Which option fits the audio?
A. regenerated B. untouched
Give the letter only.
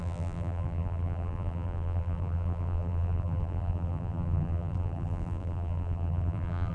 A